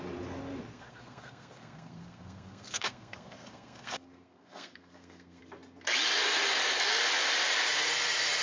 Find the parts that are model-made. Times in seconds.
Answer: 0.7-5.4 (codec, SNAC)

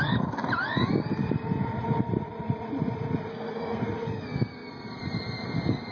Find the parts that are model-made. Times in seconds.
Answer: 3.3-3.8 (codec, SNAC)

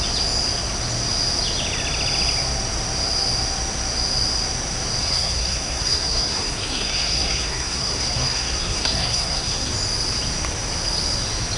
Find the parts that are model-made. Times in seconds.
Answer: 5.0-9.7 (codec, SNAC)

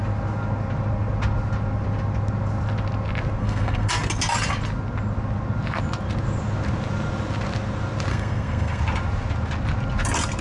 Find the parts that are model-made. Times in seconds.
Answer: 3.4-3.9 (codec, SNAC); 8.1-8.8

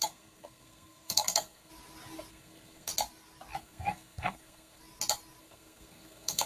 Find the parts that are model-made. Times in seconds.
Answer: 0.0-1.7 (codec, SNAC); 2.3-2.9; 3.6-4.8; 5.4-6.5

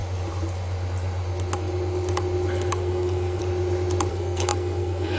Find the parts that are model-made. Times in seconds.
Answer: 2.7-3.4 (codec, SNAC); 4.1-5.2